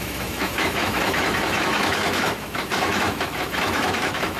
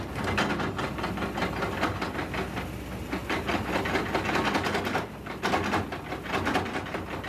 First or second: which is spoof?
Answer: first